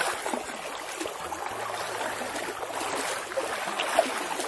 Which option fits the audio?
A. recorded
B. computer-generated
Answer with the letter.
A